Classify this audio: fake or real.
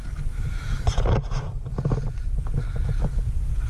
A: real